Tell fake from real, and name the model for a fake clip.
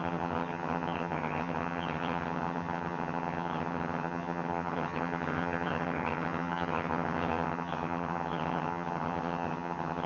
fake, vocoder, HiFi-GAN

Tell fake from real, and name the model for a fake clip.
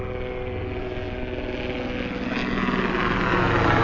real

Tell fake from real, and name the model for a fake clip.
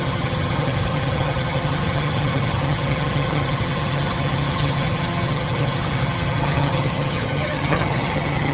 fake, vocoder, HiFi-GAN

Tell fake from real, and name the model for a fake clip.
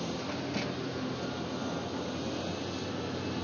real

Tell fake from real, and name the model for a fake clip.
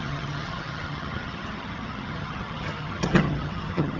fake, vocoder, HiFi-GAN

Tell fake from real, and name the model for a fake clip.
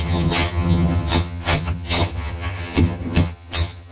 fake, vocoder, HiFi-GAN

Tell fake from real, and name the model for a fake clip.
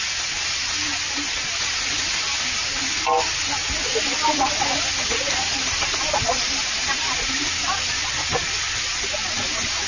real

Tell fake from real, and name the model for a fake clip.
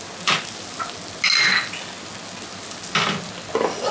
real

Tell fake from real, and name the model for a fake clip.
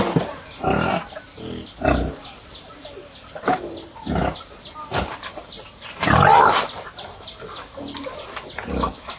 real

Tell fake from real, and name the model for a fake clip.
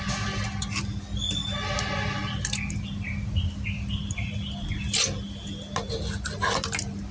real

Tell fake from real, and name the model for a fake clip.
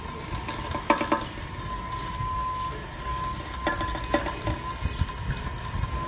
real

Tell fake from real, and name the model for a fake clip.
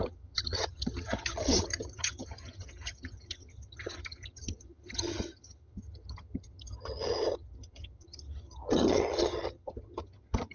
fake, vocoder, HiFi-GAN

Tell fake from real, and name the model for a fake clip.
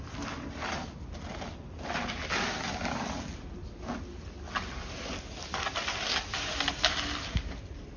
real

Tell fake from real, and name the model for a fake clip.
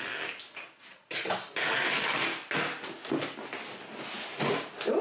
real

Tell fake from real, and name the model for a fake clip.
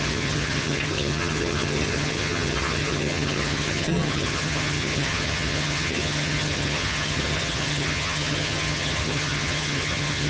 fake, vocoder, HiFi-GAN